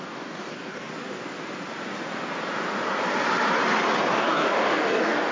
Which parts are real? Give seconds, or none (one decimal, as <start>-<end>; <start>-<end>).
0.9-4.1